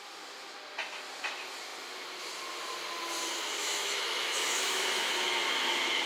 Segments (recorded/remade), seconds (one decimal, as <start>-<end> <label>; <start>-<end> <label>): 0.0-3.6 recorded; 3.6-5.1 remade; 5.1-6.1 recorded

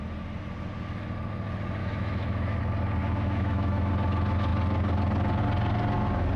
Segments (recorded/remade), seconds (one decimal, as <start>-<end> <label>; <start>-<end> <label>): 0.0-1.8 recorded; 1.8-2.6 remade; 2.6-3.0 recorded; 3.0-3.9 remade; 3.9-6.4 recorded

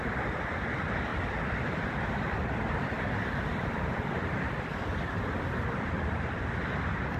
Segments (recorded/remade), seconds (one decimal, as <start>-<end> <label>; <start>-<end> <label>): 0.0-7.2 recorded

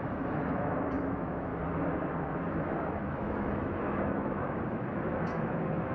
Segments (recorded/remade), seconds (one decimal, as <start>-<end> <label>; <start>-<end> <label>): 0.0-1.5 remade; 1.5-2.4 recorded; 2.4-5.9 remade

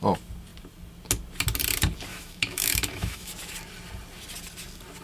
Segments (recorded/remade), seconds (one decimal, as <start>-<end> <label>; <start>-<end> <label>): 0.0-2.1 recorded; 2.1-3.3 remade; 3.3-5.0 recorded

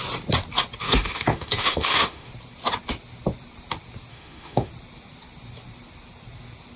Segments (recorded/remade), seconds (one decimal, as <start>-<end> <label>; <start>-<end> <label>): 0.0-0.8 recorded; 0.8-2.3 remade; 2.3-4.1 recorded; 4.1-4.7 remade; 4.7-6.8 recorded

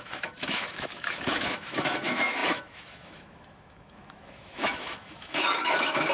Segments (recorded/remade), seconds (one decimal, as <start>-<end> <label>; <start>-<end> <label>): 0.0-6.1 remade

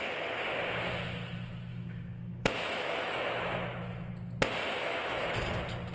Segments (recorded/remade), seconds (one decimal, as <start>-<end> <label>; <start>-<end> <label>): 0.0-1.7 recorded; 1.7-4.1 remade; 4.1-4.8 recorded; 4.8-5.3 remade; 5.3-5.9 recorded